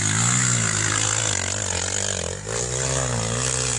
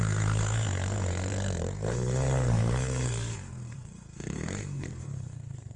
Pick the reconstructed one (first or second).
second